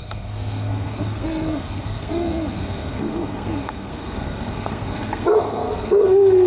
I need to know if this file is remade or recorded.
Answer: remade